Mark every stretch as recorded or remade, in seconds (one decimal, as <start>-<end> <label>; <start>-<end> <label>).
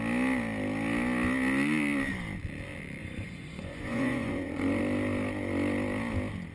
0.0-3.0 recorded; 3.0-4.8 remade; 4.8-6.5 recorded